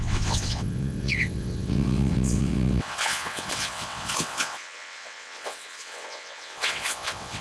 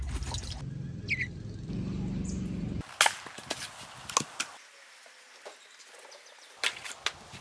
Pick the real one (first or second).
second